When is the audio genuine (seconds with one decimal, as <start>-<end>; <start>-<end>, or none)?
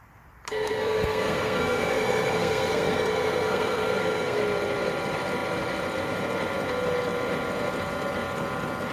0.0-0.5; 4.4-8.9